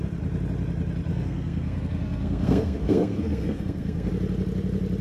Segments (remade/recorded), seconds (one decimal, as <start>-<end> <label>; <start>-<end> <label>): 0.0-1.1 recorded; 1.1-4.1 remade; 4.1-5.0 recorded